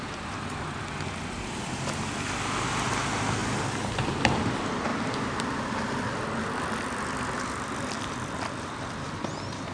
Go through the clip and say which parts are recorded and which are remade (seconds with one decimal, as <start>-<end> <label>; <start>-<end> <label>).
0.0-3.4 recorded; 3.4-4.4 remade; 4.4-4.9 recorded; 4.9-8.8 remade; 8.8-9.7 recorded